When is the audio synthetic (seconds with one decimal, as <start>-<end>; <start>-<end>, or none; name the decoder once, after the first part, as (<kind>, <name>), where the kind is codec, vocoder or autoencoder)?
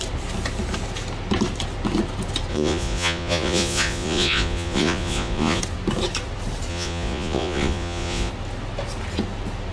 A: 2.5-5.6 (vocoder, Vocos); 6.7-8.3